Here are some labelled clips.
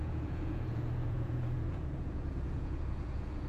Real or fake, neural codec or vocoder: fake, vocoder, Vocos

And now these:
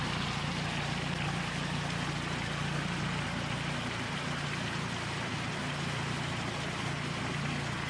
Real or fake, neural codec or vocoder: real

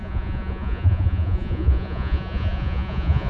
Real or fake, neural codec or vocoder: fake, vocoder, Vocos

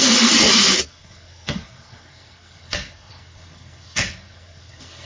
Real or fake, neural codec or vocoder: fake, codec, SNAC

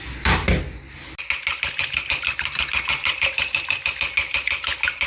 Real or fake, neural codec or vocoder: real